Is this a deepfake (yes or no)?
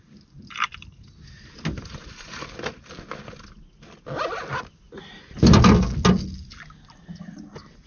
no